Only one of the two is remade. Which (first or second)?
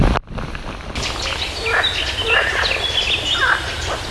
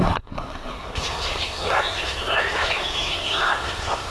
second